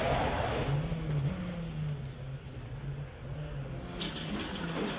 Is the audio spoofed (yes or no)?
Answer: no